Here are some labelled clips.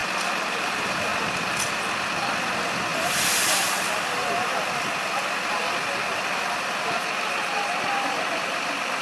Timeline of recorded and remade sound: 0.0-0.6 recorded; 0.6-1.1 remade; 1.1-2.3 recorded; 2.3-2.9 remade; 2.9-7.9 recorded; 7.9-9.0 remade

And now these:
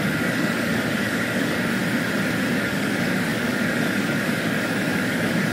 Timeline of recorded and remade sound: 0.0-1.8 remade; 1.8-2.5 recorded; 2.5-5.5 remade

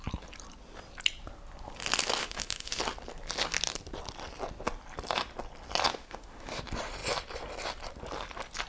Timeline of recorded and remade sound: 0.0-2.2 recorded; 2.2-2.8 remade; 2.8-5.9 recorded; 5.9-6.6 remade; 6.6-8.7 recorded